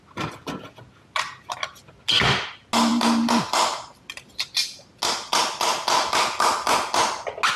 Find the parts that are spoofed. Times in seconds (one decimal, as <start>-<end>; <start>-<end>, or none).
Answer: 2.9-4.0